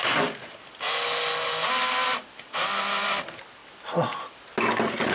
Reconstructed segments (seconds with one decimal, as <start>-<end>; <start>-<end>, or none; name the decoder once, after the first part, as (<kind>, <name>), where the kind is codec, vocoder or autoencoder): none